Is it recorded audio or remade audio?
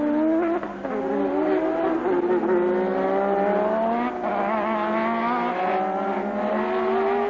recorded